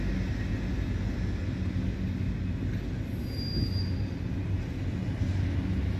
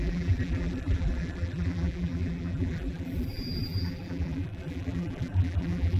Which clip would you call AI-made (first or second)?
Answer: second